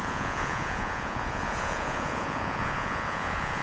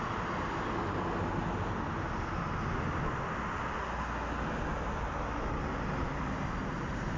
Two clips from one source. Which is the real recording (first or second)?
second